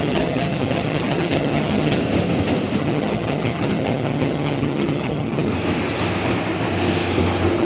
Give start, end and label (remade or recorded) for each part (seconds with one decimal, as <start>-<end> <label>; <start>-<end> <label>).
0.0-2.0 remade; 2.0-2.8 recorded; 2.8-5.5 remade; 5.5-7.6 recorded

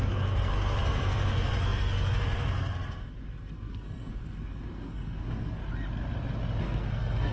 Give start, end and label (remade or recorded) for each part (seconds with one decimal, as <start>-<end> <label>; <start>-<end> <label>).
0.0-5.6 remade; 5.6-6.6 recorded; 6.6-7.3 remade

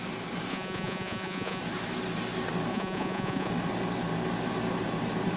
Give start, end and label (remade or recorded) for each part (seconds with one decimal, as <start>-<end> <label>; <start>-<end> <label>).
0.0-0.5 recorded; 0.5-1.6 remade; 1.6-2.7 recorded; 2.7-3.5 remade; 3.5-5.4 recorded

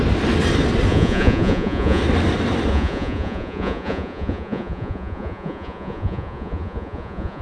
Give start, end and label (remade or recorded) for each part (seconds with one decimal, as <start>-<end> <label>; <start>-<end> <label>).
0.0-0.9 recorded; 0.9-2.0 remade; 2.0-2.7 recorded; 2.7-7.4 remade

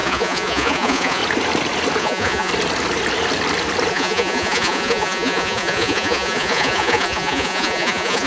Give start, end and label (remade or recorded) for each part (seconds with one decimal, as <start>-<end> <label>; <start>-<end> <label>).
0.0-1.2 remade; 1.2-2.0 recorded; 2.0-2.5 remade; 2.5-3.9 recorded; 3.9-8.3 remade

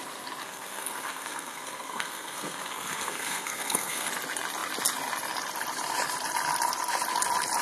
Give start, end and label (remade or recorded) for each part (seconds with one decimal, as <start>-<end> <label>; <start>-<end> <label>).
0.0-0.4 recorded; 0.4-4.1 remade; 4.1-7.6 recorded